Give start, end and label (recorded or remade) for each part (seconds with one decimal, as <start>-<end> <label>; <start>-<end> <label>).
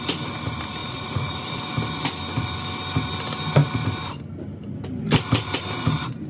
0.0-0.8 recorded; 0.8-1.6 remade; 1.6-6.3 recorded